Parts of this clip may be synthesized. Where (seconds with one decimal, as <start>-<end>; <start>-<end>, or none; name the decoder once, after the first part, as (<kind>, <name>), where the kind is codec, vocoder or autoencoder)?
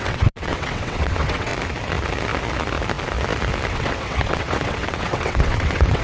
0.0-1.5 (vocoder, WaveNeXt); 3.7-6.0